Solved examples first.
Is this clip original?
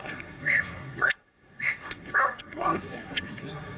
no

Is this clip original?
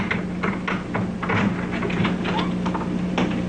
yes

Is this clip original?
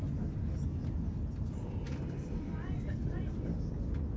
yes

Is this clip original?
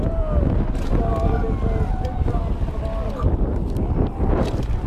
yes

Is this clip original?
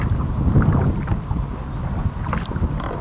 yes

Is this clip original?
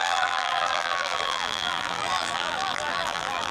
no